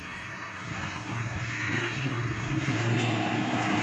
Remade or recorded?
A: remade